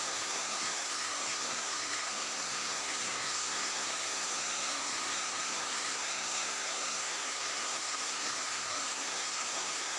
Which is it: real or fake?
fake